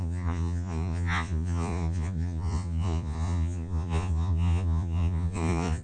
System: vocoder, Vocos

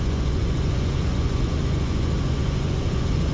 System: vocoder, Vocos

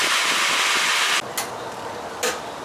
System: none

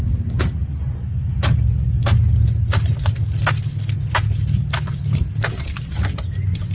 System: none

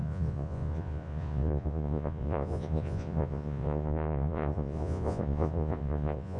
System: vocoder, Vocos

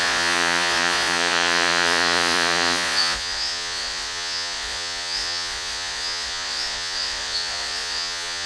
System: vocoder, Vocos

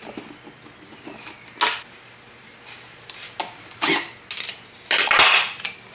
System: none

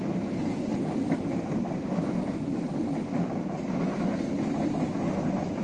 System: none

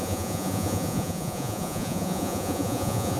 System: vocoder, Vocos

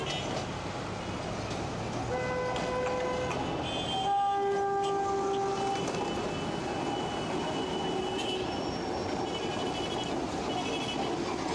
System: none